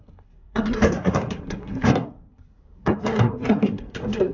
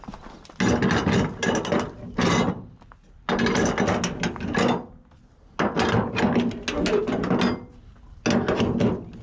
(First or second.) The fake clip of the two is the first